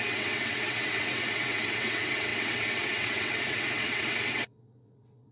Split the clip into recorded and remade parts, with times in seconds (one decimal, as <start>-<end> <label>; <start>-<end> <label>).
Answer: 0.0-5.3 remade